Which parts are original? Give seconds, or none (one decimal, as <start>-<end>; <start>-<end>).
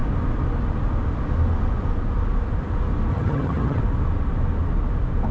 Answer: 0.0-3.1; 3.8-5.3